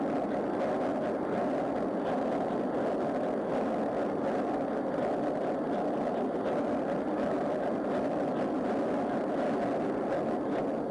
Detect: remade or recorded recorded